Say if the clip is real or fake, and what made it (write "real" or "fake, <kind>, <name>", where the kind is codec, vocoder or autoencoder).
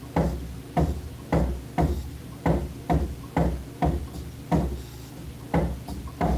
real